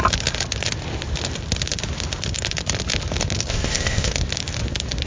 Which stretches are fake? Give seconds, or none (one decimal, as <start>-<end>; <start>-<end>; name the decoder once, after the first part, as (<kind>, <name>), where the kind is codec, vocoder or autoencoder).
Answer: 3.5-4.1 (codec, ZipCodec)